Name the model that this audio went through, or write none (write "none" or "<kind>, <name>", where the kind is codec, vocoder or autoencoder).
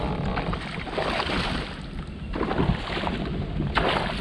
none